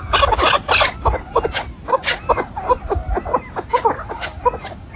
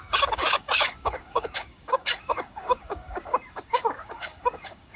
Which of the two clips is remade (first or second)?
second